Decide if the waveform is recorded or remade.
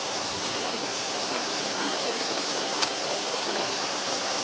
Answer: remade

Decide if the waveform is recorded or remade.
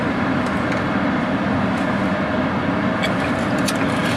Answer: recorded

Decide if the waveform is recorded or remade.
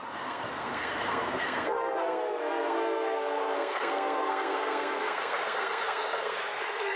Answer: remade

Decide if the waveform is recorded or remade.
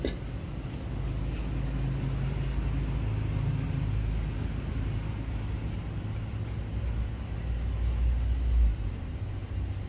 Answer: recorded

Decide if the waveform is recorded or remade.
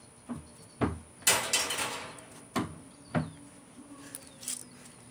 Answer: recorded